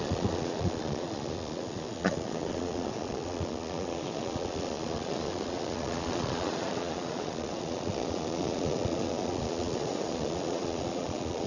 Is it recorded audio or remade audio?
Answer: remade